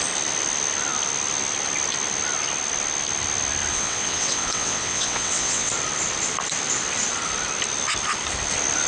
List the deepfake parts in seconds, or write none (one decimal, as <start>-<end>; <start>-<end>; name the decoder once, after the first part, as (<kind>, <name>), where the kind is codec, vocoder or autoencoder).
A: 3.7-5.7 (vocoder, WaveNeXt)